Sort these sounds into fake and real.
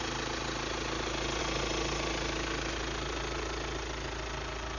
real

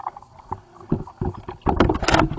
real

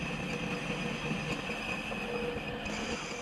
real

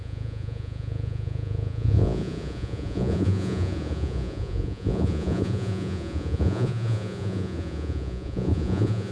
fake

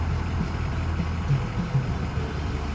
real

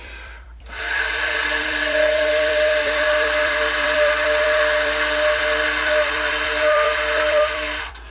fake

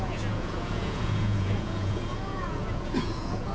fake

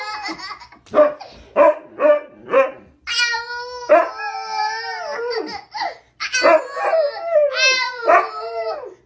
real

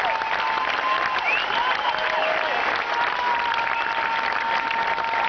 real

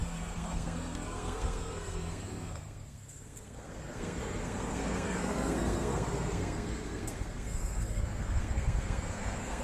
fake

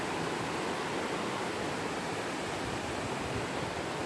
real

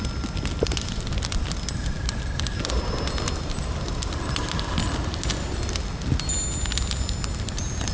real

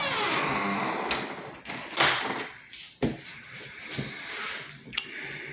real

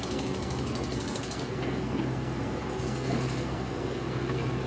fake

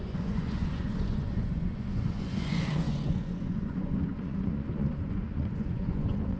fake